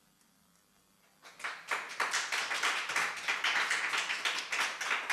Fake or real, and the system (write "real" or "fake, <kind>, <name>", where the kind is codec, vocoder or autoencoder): real